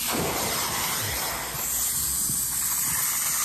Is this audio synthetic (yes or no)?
no